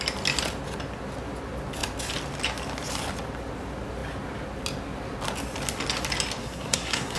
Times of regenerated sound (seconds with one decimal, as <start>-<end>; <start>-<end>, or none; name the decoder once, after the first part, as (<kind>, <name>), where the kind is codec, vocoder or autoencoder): 6.4-7.2 (codec, SNAC)